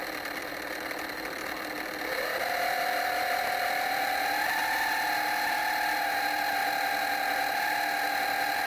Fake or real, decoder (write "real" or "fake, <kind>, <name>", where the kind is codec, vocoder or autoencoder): real